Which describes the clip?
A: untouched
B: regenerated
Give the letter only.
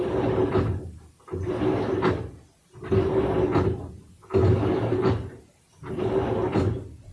A